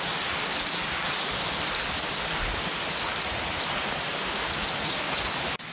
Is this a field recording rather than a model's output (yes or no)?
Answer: yes